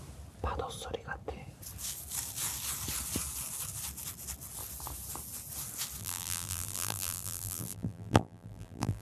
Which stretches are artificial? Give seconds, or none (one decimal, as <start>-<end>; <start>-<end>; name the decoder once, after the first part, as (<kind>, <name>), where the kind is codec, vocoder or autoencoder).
6.0-9.0 (vocoder, BigVGAN v2)